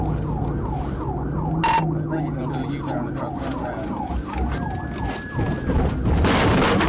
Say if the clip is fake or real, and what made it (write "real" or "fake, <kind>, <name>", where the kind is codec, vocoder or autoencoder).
real